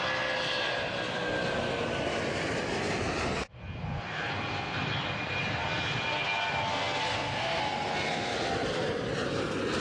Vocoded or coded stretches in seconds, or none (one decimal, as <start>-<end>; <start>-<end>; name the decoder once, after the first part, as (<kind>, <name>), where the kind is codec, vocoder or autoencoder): 6.7-7.6 (codec, SNAC)